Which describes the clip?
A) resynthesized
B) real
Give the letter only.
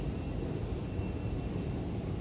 B